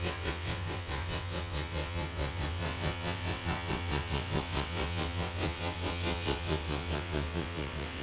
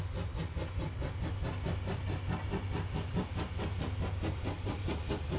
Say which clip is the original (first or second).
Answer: second